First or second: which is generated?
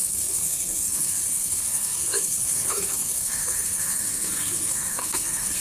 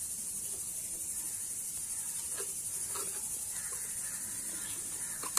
first